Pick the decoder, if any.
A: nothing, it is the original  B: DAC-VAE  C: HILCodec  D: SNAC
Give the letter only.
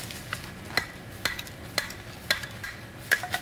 A